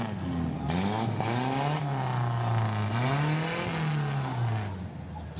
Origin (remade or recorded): recorded